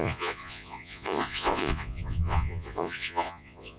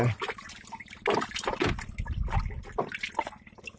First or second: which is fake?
first